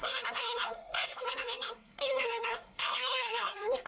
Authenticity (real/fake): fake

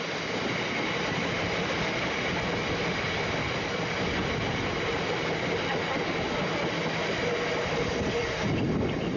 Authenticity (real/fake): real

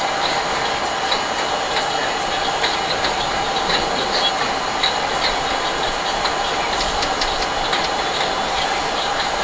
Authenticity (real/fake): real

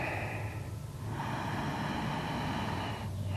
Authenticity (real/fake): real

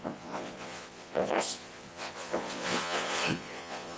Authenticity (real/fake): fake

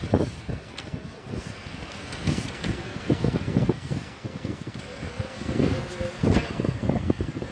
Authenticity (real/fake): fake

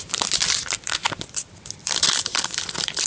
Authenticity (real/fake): fake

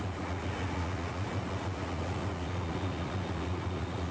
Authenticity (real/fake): fake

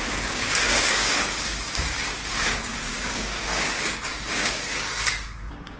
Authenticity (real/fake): fake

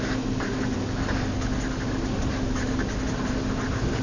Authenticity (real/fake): real